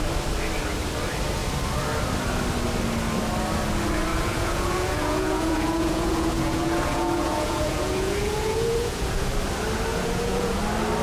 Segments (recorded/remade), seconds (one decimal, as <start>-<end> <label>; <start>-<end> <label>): 0.0-4.1 recorded; 4.1-9.3 remade; 9.3-9.9 recorded; 9.9-10.6 remade; 10.6-11.0 recorded